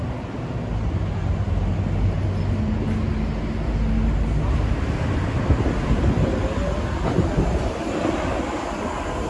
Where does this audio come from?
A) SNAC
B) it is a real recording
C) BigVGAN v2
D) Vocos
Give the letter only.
B